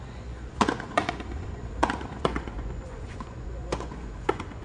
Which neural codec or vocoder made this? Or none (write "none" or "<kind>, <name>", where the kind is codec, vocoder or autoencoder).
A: vocoder, Vocos